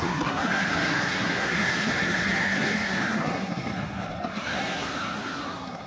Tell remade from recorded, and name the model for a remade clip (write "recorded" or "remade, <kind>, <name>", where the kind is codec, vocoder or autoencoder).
remade, codec, SNAC